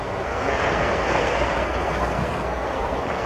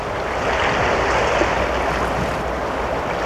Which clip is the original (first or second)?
second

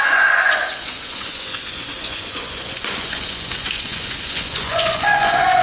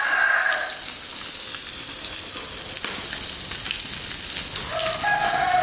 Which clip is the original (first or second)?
second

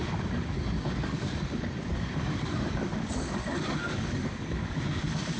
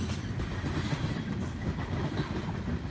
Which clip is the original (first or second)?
second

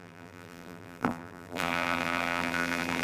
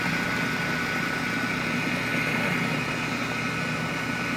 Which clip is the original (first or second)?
second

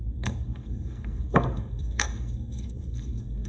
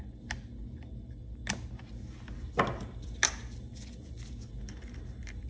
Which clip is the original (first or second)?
second